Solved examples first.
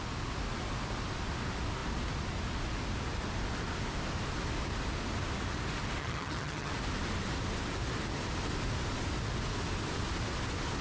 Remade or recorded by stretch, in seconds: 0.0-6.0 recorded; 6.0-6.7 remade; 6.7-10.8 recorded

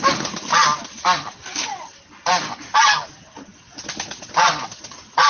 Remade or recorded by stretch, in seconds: 0.0-5.3 recorded

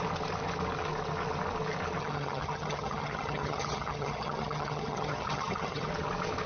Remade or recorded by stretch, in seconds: 0.0-2.0 recorded; 2.0-5.9 remade; 5.9-6.5 recorded

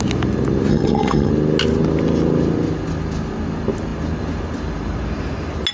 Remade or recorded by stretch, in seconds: 0.0-0.7 recorded; 0.7-1.3 remade; 1.3-5.7 recorded

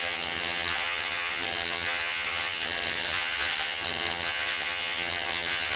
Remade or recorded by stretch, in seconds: 0.0-5.8 remade

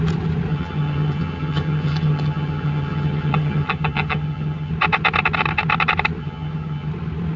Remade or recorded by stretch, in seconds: 0.0-0.5 recorded; 0.5-4.7 remade; 4.7-6.2 recorded; 6.2-6.9 remade; 6.9-7.4 recorded

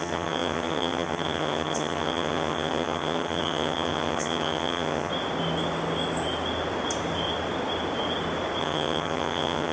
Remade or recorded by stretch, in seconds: 0.0-5.1 remade; 5.1-8.6 recorded; 8.6-9.7 remade

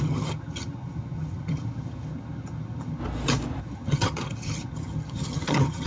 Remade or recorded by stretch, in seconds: 0.0-3.0 remade; 3.0-3.6 recorded; 3.6-5.9 remade